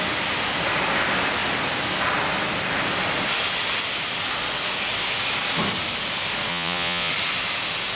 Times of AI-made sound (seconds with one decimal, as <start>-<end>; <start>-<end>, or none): 6.5-7.1